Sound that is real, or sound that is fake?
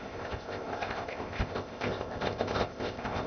fake